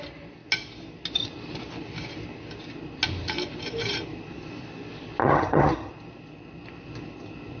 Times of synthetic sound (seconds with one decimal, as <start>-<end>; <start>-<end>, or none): 5.2-5.9

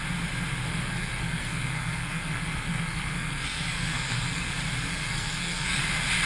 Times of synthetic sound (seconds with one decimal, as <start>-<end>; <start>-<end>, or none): 0.7-4.5; 4.9-5.8

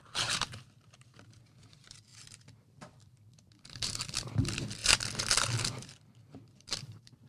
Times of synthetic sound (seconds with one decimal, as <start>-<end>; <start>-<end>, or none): 0.0-4.8; 6.2-7.3

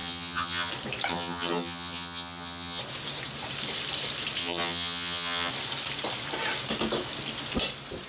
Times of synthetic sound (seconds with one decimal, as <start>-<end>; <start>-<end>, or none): 0.0-0.7; 1.1-2.8; 4.4-5.5

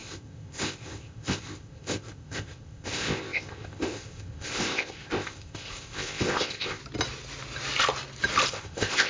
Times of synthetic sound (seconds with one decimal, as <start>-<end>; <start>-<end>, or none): 0.0-6.8; 8.5-9.1

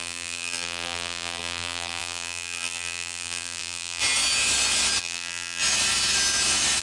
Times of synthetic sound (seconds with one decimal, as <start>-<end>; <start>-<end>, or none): 0.0-4.0; 5.0-5.6

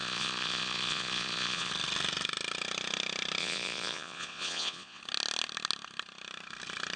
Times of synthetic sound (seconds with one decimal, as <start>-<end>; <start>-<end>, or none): 0.0-1.7; 3.4-5.0